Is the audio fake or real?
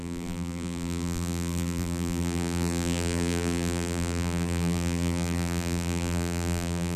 fake